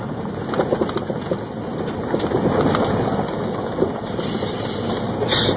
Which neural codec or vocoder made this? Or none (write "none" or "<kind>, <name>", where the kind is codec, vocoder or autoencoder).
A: none